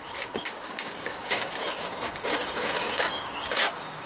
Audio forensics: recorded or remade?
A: remade